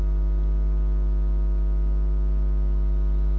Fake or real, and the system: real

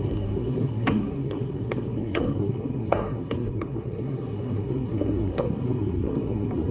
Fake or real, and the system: fake, codec, SNAC